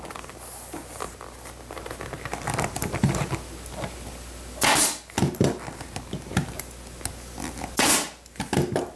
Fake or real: real